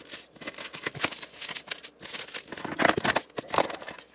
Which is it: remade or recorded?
recorded